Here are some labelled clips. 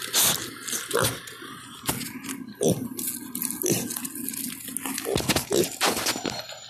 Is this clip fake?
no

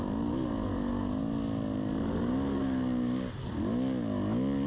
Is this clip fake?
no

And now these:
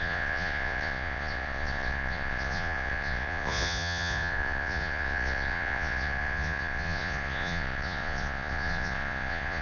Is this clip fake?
yes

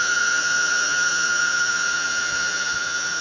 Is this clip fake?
yes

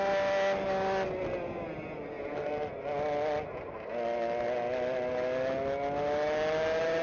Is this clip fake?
no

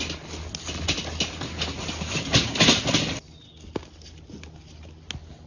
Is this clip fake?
no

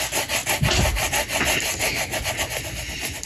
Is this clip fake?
no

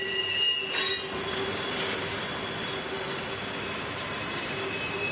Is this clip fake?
no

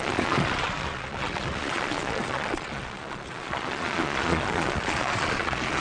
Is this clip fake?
yes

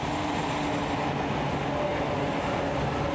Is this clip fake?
no